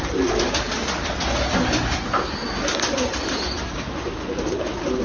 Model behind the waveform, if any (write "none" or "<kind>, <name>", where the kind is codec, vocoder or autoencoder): none